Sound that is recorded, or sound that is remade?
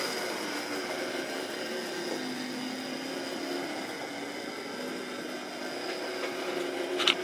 recorded